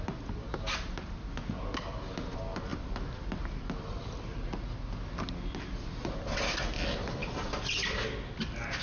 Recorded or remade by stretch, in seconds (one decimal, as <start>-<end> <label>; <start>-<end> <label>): 0.0-8.8 recorded